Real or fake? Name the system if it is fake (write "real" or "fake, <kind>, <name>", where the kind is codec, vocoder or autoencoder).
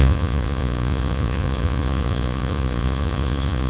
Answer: fake, vocoder, Vocos